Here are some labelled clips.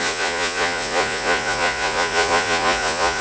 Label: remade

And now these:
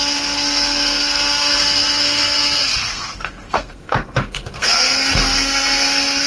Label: remade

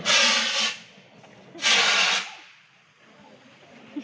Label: recorded